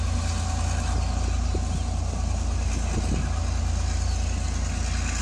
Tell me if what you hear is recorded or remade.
recorded